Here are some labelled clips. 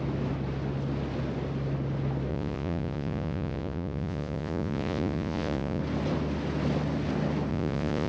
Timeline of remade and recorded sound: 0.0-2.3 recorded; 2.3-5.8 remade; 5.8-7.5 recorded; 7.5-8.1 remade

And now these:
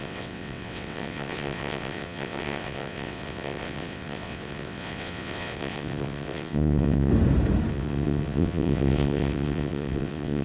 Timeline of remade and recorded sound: 0.0-7.1 remade; 7.1-7.7 recorded; 7.7-10.4 remade